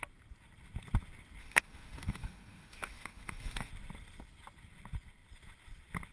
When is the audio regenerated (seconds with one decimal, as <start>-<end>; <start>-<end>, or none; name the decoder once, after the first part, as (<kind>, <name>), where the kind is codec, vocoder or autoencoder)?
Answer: 1.4-3.7 (autoencoder, DAC-VAE)